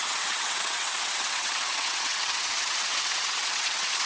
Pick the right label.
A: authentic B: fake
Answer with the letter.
B